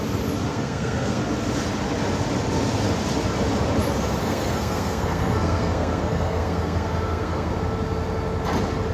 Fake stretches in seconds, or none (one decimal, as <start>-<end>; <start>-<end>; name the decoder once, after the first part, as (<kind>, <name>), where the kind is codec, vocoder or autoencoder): 0.5-1.2 (codec, SNAC); 4.2-7.5